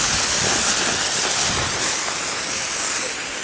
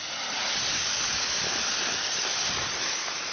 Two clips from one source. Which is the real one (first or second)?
first